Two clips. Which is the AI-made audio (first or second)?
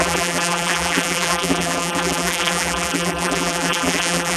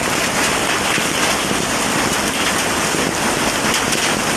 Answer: first